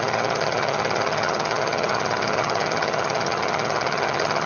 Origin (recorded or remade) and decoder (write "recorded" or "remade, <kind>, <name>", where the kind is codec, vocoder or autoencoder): remade, vocoder, HiFi-GAN